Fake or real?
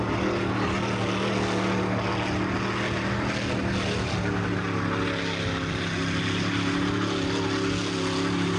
real